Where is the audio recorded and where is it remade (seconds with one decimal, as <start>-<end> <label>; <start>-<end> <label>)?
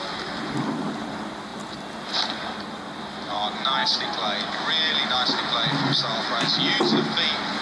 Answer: 0.0-7.6 recorded